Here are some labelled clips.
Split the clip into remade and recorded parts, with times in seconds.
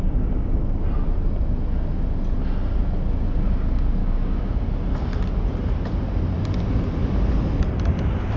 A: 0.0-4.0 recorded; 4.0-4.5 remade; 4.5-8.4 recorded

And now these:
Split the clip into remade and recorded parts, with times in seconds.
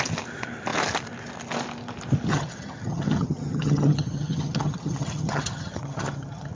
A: 0.0-2.3 recorded; 2.3-6.5 remade